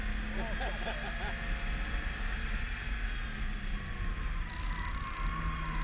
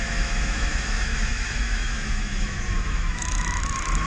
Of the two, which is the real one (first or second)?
first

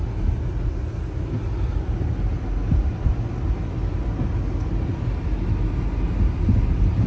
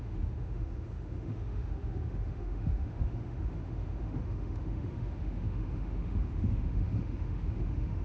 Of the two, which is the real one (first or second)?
first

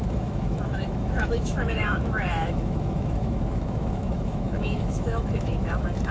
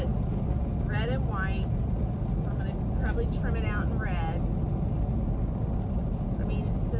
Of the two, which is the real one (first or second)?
second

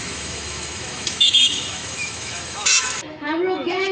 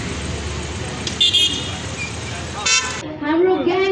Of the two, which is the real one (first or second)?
second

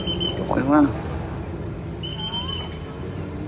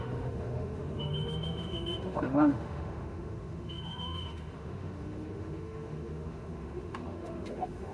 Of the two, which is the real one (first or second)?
first